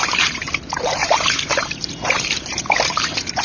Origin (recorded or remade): remade